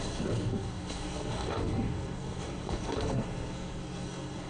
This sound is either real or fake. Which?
fake